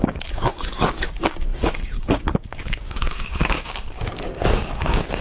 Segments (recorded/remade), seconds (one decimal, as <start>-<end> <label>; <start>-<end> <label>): 0.0-5.2 remade